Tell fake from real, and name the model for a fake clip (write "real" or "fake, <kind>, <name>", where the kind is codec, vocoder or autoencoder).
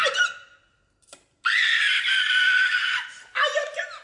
fake, vocoder, BigVGAN v2